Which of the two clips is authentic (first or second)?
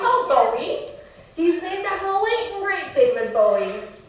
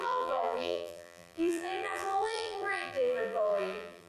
first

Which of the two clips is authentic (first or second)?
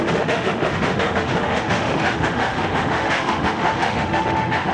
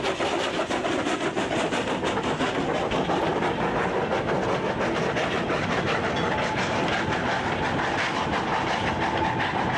second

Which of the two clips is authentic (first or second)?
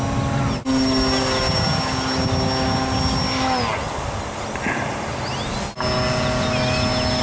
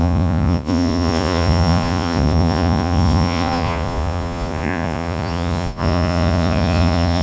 first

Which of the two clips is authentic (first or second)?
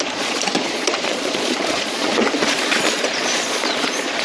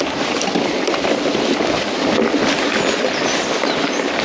second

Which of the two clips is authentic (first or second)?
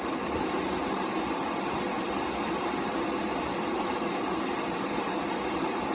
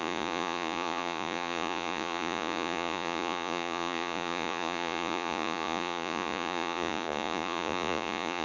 first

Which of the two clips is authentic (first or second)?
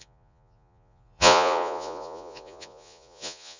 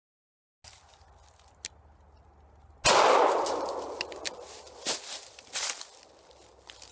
second